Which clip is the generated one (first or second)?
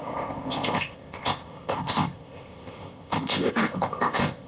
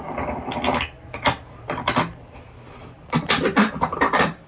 first